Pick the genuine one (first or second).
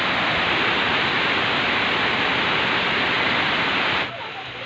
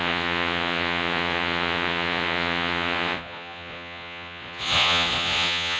first